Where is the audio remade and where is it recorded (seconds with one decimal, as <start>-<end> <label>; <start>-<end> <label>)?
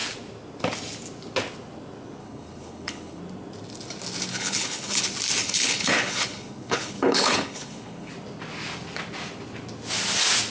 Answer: 0.0-2.2 recorded; 2.2-3.2 remade; 3.2-4.3 recorded; 4.3-5.0 remade; 5.0-5.4 recorded; 5.4-8.1 remade; 8.1-10.5 recorded